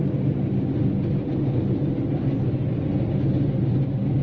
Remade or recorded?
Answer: recorded